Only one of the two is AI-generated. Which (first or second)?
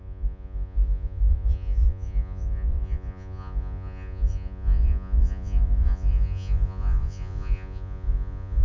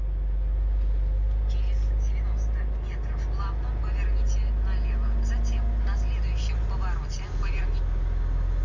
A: first